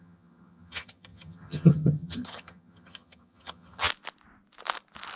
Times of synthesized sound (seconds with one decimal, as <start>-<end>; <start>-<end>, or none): 0.0-3.9